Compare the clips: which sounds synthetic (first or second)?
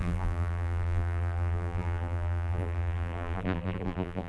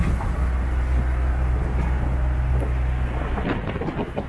first